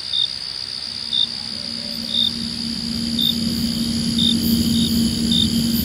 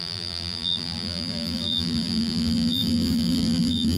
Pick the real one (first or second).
first